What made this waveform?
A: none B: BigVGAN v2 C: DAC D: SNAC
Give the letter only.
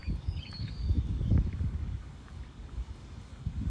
C